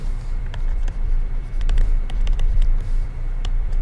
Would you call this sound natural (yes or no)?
no